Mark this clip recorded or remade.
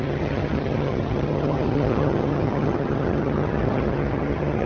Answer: remade